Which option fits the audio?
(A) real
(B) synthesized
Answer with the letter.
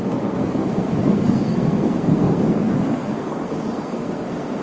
B